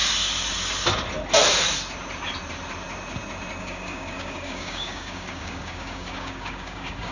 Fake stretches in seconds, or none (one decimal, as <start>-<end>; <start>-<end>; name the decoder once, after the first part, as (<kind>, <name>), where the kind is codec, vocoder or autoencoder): 3.6-7.1 (codec, DAC)